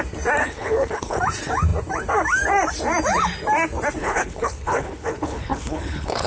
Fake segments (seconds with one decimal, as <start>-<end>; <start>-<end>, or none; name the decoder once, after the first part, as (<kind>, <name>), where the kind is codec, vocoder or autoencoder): 0.4-1.2 (codec, HILCodec); 4.0-6.3